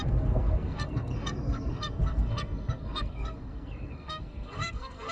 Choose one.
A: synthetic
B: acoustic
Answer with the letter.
A